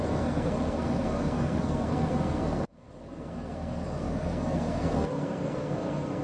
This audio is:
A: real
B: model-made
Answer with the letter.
B